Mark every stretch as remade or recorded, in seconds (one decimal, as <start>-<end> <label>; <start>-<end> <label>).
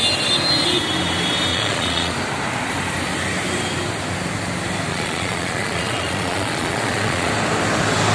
0.0-1.5 recorded; 1.5-2.1 remade; 2.1-4.9 recorded; 4.9-7.3 remade; 7.3-8.1 recorded